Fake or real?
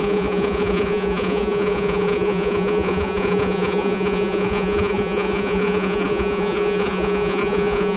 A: fake